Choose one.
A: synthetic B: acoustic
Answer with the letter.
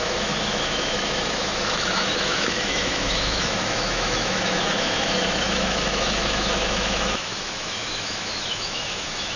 A